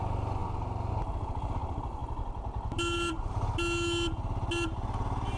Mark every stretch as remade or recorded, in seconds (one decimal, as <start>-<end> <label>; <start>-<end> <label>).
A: 0.0-5.4 recorded